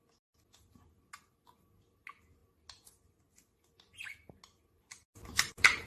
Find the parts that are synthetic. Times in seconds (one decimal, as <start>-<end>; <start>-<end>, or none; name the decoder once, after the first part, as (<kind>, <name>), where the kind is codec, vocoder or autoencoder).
none